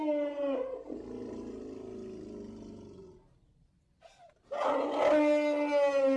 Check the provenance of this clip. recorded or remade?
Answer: recorded